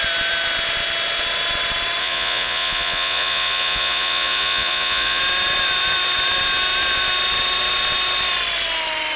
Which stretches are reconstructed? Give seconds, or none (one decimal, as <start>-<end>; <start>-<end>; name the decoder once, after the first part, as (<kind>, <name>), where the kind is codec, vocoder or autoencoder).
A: 2.0-5.2 (vocoder, Vocos)

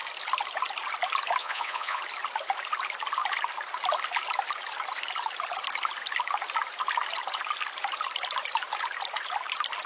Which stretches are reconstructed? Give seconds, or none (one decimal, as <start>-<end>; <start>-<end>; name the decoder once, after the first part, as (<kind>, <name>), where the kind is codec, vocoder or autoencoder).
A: 1.4-2.0 (vocoder, Vocos)

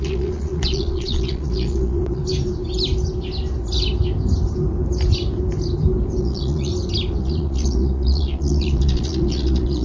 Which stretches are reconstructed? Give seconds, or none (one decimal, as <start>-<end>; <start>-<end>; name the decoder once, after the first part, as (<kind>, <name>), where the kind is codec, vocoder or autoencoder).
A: 0.0-2.2 (vocoder, Vocos); 6.2-6.7; 7.2-9.8

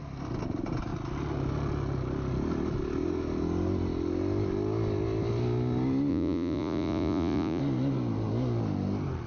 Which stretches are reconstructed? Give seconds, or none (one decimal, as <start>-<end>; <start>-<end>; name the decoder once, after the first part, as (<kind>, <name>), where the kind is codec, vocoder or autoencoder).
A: 6.1-7.6 (vocoder, Vocos)

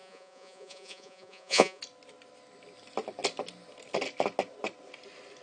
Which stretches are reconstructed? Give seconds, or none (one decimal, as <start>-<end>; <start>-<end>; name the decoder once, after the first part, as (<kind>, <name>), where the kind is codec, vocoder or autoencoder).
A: 0.0-1.8 (vocoder, Vocos)

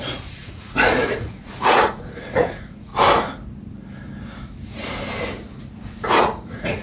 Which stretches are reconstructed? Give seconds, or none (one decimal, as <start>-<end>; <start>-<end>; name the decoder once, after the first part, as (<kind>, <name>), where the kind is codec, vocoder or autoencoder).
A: 0.0-2.9 (vocoder, Vocos); 6.2-6.8

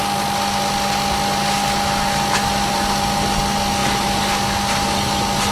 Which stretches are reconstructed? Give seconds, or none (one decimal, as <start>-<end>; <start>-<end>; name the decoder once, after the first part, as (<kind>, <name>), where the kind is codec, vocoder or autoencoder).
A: none